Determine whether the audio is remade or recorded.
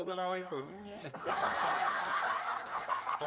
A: remade